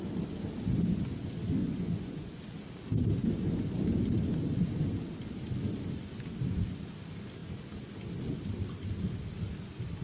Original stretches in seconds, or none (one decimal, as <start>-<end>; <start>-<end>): 0.0-1.6; 2.4-10.0